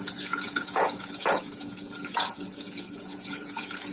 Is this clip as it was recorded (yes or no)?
no